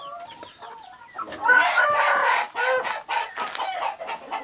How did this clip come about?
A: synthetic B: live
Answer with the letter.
B